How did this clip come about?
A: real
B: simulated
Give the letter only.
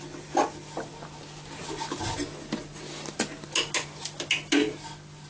A